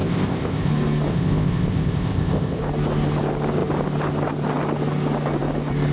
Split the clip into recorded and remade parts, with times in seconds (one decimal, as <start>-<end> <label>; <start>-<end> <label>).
0.0-0.7 remade; 0.7-1.1 recorded; 1.1-2.6 remade; 2.6-5.9 recorded

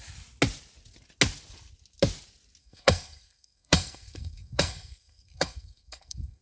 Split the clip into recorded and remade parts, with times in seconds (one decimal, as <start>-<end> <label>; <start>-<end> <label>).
0.0-2.6 recorded; 2.6-6.4 remade